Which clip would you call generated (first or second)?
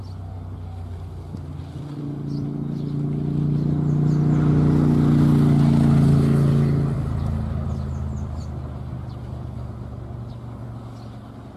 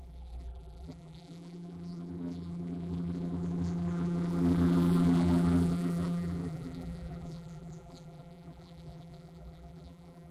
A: second